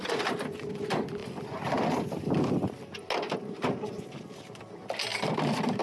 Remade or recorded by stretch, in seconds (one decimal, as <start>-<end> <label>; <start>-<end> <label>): 0.0-5.1 recorded; 5.1-5.8 remade